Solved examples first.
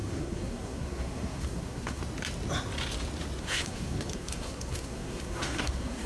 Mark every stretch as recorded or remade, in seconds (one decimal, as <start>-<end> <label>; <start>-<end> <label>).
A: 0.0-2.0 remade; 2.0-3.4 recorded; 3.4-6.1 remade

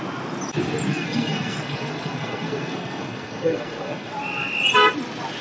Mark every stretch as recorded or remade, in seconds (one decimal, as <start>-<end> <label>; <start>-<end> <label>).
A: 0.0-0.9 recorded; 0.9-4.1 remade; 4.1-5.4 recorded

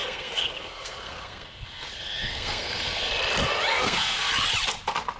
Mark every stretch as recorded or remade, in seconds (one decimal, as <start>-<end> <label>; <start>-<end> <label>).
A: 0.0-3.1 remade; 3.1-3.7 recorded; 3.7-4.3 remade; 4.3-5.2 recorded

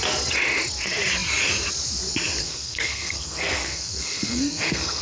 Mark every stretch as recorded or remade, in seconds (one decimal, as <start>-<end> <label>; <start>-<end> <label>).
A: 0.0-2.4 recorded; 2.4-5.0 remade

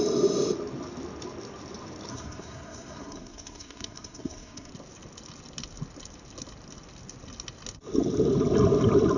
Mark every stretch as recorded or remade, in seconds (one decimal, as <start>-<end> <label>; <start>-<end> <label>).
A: 0.0-2.1 recorded; 2.1-4.7 remade; 4.7-9.2 recorded

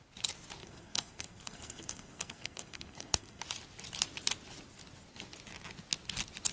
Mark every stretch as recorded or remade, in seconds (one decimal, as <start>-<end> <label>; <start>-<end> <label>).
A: 0.0-0.6 recorded; 0.6-3.4 remade; 3.4-6.5 recorded

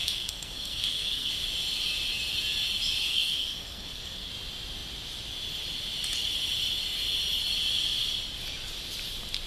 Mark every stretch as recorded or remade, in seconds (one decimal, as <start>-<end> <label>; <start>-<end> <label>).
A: 0.0-1.3 remade; 1.3-3.0 recorded; 3.0-4.3 remade; 4.3-9.5 recorded

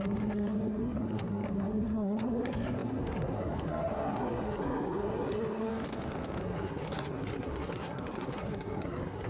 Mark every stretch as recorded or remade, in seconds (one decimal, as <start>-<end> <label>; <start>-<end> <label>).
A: 0.0-5.7 remade; 5.7-6.4 recorded; 6.4-9.3 remade